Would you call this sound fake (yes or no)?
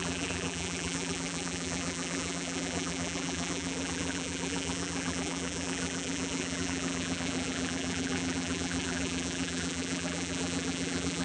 yes